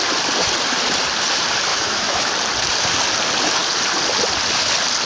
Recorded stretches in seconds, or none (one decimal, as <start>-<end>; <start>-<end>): 0.0-1.7; 2.3-5.1